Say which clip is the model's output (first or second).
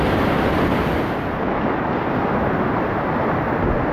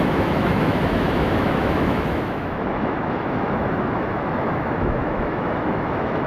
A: second